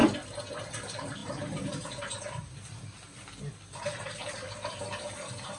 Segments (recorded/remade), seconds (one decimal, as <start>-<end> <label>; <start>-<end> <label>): 0.0-1.2 recorded; 1.2-2.8 remade; 2.8-4.2 recorded; 4.2-4.8 remade; 4.8-5.6 recorded

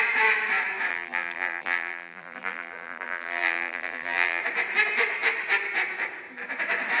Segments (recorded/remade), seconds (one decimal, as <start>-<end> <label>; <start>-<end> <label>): 0.0-0.9 recorded; 0.9-4.4 remade; 4.4-7.0 recorded

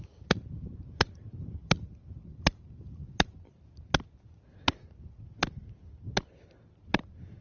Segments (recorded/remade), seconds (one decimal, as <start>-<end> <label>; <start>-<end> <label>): 0.0-3.0 remade; 3.0-7.4 recorded